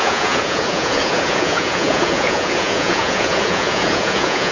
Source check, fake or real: fake